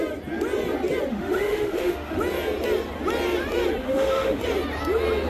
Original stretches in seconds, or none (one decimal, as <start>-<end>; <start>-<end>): 0.0-1.1; 2.2-3.8; 4.4-5.3